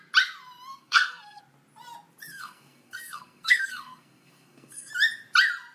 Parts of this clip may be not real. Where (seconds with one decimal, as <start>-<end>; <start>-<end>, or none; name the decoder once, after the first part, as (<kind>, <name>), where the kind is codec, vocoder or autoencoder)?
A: 0.7-1.4 (codec, SNAC); 2.2-4.9